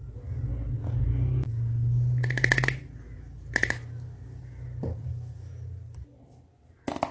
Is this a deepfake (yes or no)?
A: no